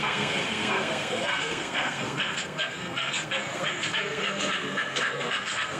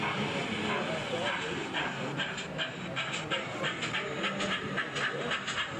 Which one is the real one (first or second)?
second